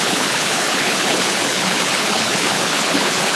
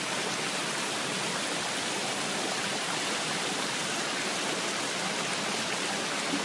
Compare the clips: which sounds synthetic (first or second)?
first